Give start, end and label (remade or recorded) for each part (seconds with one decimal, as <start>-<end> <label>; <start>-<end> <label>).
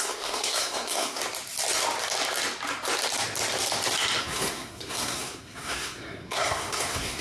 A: 0.0-1.2 remade; 1.2-4.2 recorded; 4.2-7.2 remade